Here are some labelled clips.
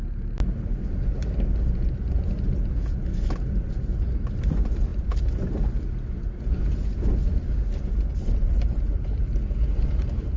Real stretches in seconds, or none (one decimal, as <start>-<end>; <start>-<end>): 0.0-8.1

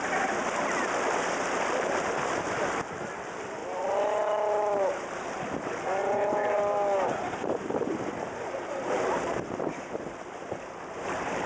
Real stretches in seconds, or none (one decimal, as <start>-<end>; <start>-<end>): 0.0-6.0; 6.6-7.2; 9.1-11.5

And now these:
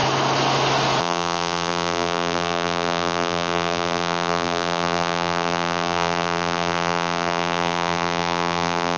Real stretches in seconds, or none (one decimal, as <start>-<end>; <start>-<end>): 0.0-1.0